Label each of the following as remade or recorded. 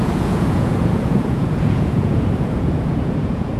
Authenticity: remade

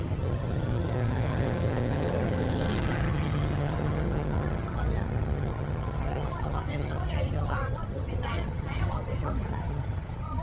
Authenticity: remade